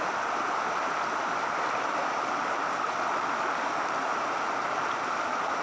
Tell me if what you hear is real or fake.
real